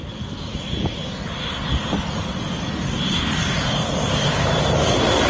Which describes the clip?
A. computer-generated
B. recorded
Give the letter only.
B